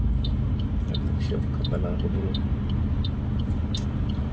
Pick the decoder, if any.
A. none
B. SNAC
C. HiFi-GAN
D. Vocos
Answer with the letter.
A